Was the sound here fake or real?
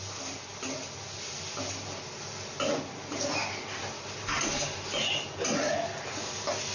real